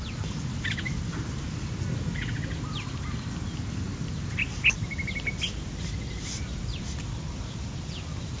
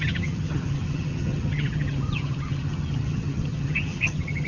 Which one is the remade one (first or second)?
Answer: second